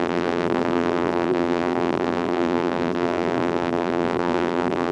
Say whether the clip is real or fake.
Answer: fake